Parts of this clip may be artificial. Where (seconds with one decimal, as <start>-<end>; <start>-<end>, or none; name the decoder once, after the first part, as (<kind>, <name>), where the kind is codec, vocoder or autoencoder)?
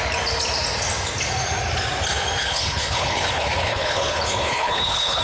2.4-5.2 (codec, HILCodec)